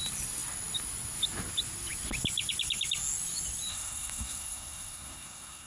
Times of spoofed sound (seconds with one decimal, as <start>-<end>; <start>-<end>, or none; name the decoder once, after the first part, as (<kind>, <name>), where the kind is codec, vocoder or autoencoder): 3.7-5.7 (codec, SNAC)